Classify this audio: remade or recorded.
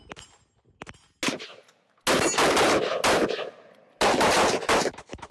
recorded